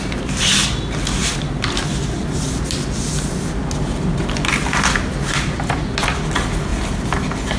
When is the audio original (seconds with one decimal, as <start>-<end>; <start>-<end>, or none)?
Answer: 0.0-7.6